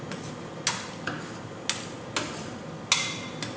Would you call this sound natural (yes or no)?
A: yes